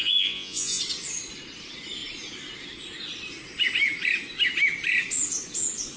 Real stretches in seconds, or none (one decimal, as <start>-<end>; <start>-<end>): 0.8-6.0